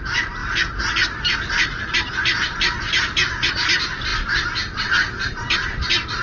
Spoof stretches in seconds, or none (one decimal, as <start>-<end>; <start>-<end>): none